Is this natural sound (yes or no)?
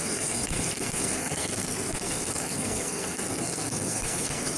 no